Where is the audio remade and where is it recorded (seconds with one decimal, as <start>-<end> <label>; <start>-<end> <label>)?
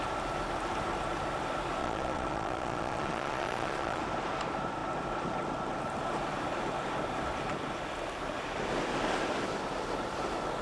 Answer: 0.0-1.8 recorded; 1.8-4.0 remade; 4.0-10.6 recorded